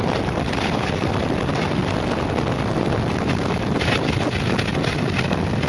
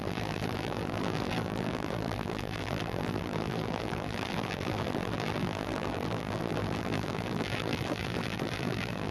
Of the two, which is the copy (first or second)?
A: second